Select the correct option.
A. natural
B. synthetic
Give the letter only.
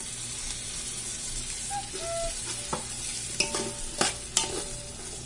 A